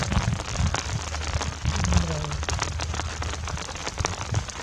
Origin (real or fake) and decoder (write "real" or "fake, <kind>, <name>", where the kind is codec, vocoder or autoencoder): real